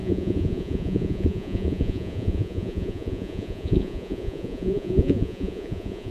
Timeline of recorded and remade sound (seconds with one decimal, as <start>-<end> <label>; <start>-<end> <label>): 0.0-6.1 remade